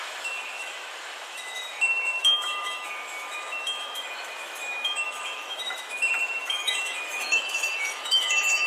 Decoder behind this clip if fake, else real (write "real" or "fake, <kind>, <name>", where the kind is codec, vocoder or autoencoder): fake, autoencoder, DAC-VAE